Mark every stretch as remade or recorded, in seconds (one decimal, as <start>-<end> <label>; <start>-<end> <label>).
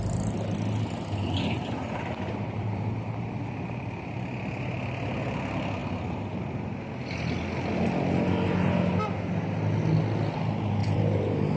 0.0-1.8 recorded; 1.8-3.9 remade; 3.9-10.8 recorded; 10.8-11.6 remade